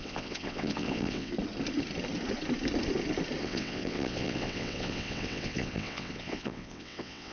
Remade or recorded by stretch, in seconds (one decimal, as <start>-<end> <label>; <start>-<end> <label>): 0.0-1.3 remade; 1.3-3.4 recorded; 3.4-7.3 remade